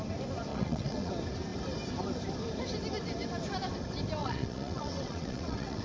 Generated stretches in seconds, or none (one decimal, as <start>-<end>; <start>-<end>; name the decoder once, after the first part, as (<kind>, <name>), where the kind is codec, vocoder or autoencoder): 0.5-1.1 (vocoder, WaveNeXt); 4.2-5.8